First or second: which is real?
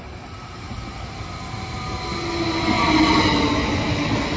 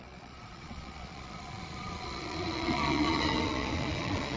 first